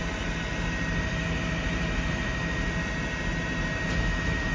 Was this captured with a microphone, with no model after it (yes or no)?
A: yes